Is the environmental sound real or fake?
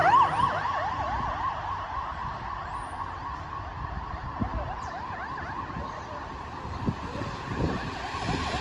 real